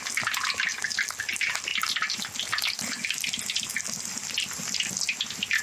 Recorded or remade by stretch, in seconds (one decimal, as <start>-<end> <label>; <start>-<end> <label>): 0.0-5.6 recorded